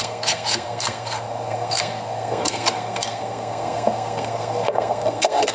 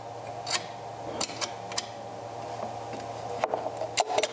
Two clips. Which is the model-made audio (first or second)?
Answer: first